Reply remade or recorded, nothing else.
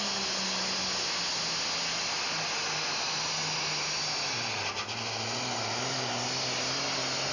recorded